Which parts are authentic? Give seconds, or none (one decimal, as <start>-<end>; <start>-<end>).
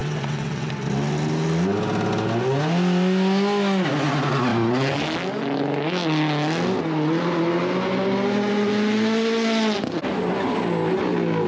0.7-11.5